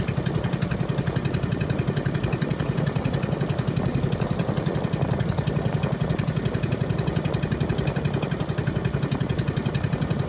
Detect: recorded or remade recorded